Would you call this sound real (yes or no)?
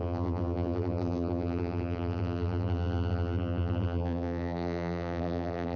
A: no